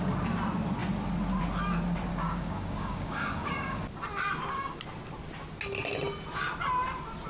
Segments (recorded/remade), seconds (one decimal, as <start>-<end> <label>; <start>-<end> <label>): 0.0-2.1 recorded; 2.1-3.8 remade; 3.8-7.3 recorded